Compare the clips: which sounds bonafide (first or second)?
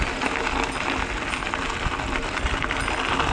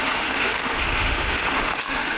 first